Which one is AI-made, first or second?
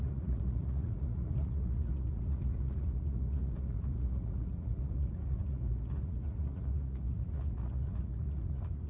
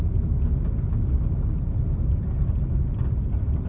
first